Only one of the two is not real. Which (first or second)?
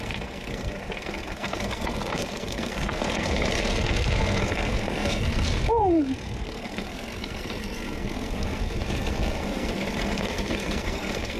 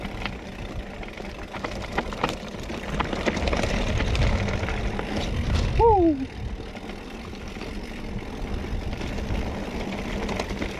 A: first